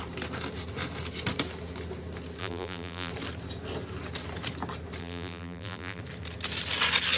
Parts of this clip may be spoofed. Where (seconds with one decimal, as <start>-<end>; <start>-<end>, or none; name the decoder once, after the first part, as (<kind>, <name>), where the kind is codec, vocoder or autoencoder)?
2.4-3.1 (vocoder, BigVGAN v2); 5.0-6.0